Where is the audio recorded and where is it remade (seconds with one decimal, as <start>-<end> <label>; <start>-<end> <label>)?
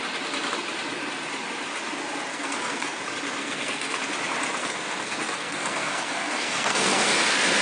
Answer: 0.0-2.3 recorded; 2.3-3.0 remade; 3.0-3.4 recorded; 3.4-4.0 remade; 4.0-4.6 recorded; 4.6-7.6 remade